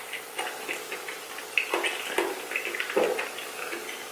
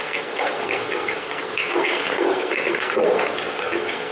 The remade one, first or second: second